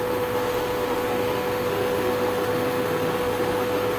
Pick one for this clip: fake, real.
fake